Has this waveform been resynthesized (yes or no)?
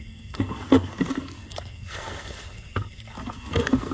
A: yes